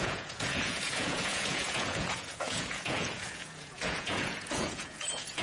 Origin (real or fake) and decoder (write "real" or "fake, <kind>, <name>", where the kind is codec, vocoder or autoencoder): fake, vocoder, Vocos